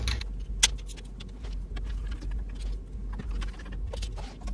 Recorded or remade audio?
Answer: recorded